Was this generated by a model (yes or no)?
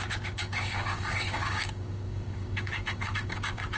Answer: yes